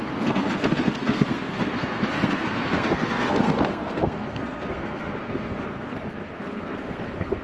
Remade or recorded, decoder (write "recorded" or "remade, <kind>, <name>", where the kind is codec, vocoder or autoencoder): remade, codec, SNAC